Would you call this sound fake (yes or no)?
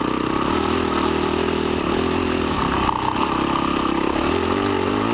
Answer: no